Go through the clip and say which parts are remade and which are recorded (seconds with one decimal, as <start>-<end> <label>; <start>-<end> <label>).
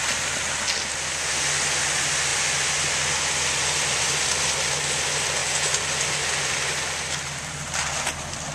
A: 0.0-8.5 recorded